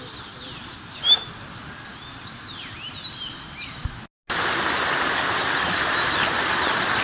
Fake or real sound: real